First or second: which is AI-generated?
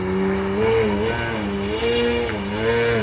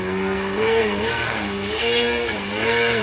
second